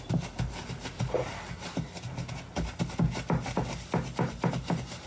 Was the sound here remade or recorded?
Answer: recorded